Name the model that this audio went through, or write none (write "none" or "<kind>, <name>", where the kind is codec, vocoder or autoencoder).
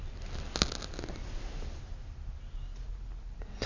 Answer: none